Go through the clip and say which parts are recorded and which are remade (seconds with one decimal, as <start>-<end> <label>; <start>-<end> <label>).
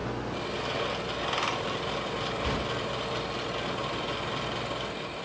0.0-5.2 recorded